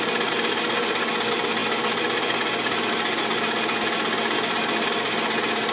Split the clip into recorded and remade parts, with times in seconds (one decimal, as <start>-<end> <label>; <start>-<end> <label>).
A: 0.0-5.7 recorded